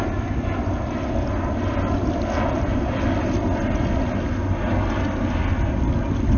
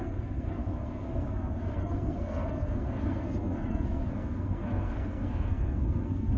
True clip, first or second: first